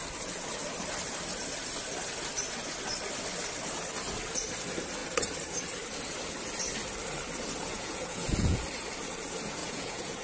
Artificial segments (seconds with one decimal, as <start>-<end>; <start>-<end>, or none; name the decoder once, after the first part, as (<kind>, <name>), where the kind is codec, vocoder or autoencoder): 7.6-8.6 (vocoder, Vocos); 9.6-10.2